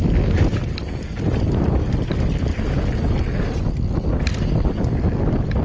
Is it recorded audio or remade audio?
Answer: recorded